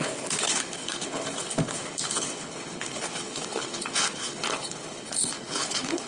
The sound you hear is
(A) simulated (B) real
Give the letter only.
A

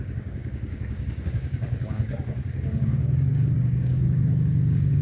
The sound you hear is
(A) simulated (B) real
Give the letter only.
A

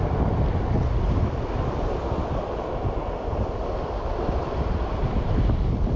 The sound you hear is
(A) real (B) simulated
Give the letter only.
A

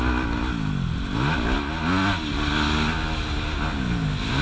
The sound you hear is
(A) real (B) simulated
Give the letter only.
A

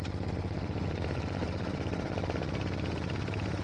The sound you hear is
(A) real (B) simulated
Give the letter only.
A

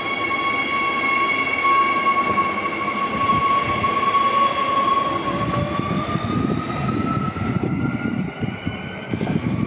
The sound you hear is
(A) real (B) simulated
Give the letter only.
A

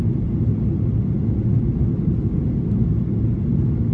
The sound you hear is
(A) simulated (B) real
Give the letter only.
B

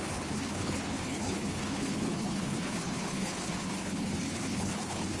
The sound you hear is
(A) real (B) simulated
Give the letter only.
B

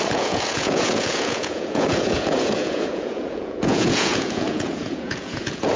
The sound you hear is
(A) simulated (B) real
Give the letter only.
A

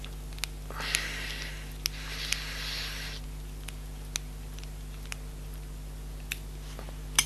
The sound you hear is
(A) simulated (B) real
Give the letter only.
B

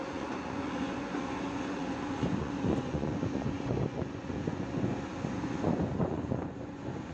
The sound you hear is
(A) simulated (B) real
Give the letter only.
A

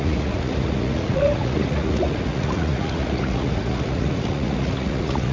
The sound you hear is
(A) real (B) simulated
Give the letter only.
B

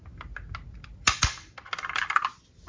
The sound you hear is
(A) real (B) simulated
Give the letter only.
A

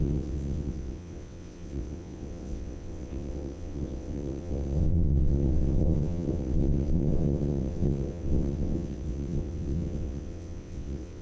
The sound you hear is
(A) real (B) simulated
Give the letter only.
B